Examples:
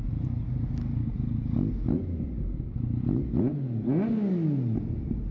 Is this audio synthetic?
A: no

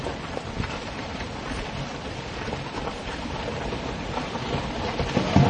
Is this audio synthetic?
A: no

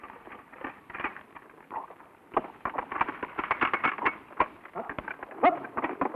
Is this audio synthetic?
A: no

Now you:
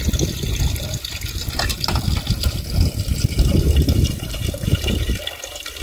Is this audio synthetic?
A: no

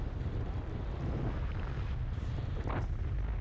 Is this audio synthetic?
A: no